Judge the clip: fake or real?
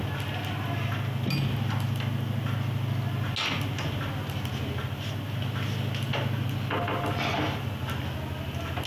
real